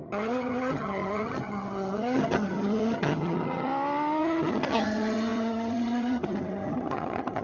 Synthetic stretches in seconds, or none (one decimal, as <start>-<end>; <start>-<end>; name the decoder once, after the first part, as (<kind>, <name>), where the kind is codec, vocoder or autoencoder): 0.0-3.7 (vocoder, HiFi-GAN); 4.2-7.4